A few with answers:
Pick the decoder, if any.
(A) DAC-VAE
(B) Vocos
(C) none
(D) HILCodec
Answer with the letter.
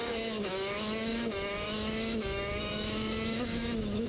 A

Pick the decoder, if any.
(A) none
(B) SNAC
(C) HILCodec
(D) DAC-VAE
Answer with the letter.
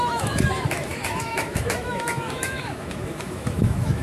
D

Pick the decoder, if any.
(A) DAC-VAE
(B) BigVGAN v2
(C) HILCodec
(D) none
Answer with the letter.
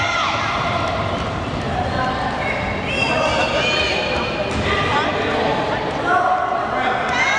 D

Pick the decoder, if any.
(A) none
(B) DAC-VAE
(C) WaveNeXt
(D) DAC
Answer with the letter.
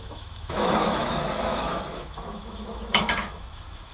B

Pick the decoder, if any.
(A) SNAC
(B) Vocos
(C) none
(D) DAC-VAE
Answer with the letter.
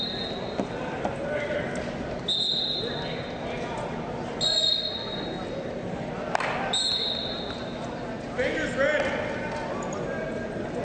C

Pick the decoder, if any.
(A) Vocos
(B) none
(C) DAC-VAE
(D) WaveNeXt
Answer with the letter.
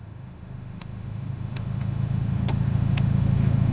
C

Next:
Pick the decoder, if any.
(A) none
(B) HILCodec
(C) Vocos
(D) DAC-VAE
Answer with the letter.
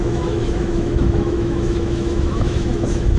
D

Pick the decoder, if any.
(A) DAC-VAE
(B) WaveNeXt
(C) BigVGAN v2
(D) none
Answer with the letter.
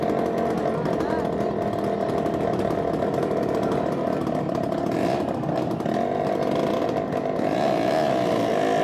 D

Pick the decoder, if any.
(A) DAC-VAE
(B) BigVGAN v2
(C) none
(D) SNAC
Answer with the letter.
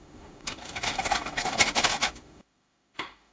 A